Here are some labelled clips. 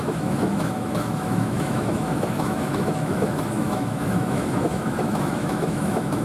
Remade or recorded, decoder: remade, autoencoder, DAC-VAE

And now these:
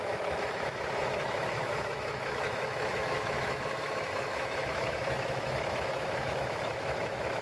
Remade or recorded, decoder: remade, autoencoder, DAC-VAE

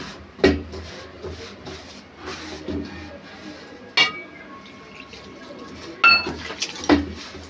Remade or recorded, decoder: recorded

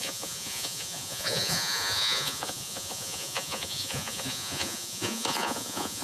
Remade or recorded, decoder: remade, vocoder, Vocos